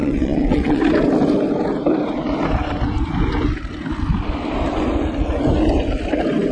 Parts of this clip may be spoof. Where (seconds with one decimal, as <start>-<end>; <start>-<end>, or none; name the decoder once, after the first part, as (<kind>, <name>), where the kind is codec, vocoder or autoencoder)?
0.0-0.8 (vocoder, WaveNeXt)